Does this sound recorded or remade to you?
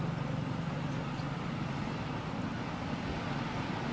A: recorded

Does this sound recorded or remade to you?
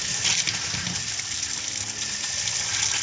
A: recorded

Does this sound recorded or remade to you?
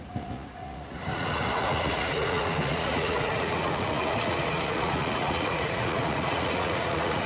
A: remade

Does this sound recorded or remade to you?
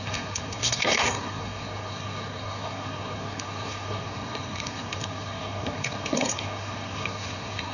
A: remade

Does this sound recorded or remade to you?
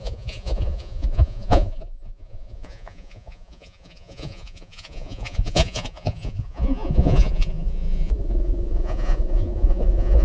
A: remade